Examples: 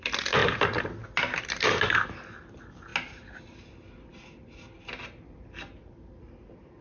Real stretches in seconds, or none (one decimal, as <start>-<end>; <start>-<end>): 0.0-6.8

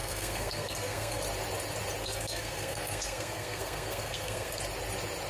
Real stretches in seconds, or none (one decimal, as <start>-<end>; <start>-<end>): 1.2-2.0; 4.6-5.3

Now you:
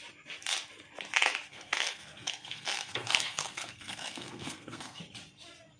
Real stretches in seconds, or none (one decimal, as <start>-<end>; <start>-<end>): 0.0-1.5; 5.0-5.8

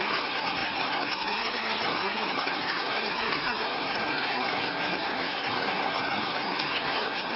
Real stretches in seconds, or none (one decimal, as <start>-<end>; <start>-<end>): none

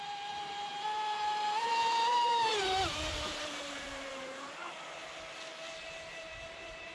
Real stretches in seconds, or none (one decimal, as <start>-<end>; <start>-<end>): 4.6-6.1

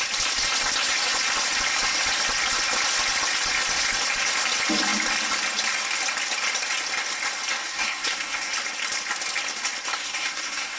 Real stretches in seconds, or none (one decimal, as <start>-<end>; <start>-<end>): 0.0-7.6; 8.5-10.0

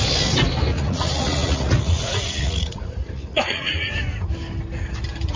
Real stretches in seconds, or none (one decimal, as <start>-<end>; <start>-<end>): 0.0-0.7; 3.9-5.4

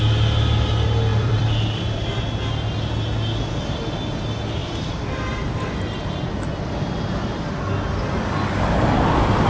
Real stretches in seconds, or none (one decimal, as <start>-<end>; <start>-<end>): 0.0-1.1; 2.2-4.6; 6.9-9.5